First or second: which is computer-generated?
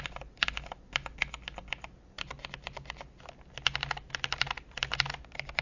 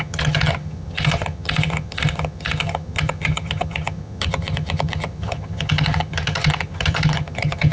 second